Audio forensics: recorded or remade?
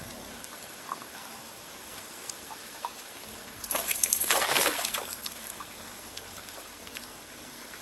remade